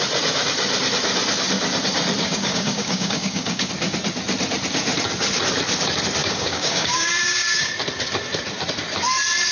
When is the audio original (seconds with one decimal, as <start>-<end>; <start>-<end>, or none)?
0.0-2.2; 3.7-6.2; 7.7-9.5